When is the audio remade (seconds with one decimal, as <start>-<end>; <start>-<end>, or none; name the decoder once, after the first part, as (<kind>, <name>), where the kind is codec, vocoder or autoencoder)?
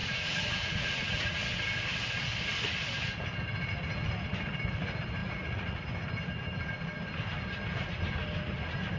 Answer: 0.0-1.4 (vocoder, Vocos); 5.2-5.8